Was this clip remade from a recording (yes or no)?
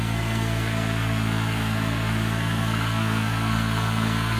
yes